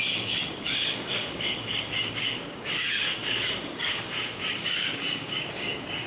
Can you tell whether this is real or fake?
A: fake